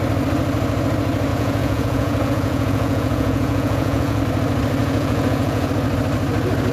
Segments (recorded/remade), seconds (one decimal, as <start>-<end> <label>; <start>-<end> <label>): 0.0-1.3 recorded; 1.3-4.2 remade; 4.2-4.8 recorded; 4.8-5.7 remade; 5.7-6.7 recorded